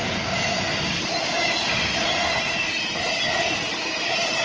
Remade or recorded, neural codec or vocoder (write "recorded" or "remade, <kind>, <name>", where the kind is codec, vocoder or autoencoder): recorded